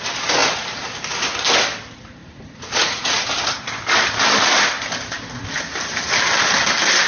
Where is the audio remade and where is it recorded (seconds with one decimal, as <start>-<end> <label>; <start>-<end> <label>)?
0.0-2.2 recorded; 2.2-3.2 remade; 3.2-7.1 recorded